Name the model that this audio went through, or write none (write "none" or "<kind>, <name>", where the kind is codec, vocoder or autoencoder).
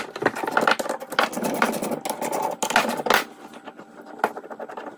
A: none